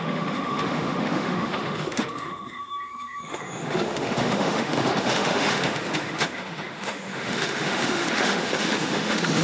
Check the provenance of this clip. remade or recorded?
remade